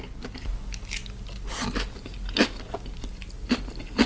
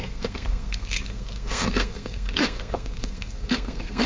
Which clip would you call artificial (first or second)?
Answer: second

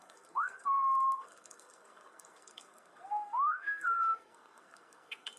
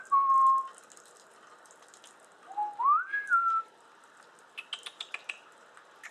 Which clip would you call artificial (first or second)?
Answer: first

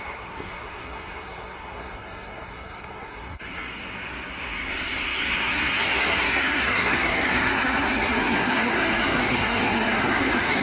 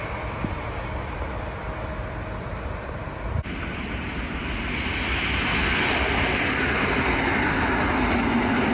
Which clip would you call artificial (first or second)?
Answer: first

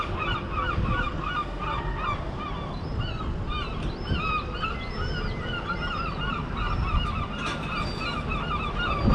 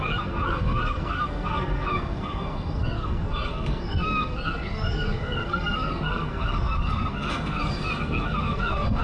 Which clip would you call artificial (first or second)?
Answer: second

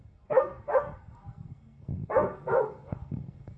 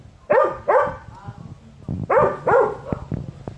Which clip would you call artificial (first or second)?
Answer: first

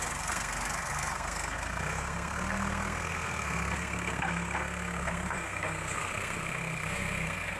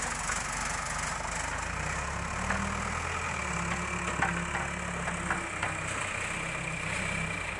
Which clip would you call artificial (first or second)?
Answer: first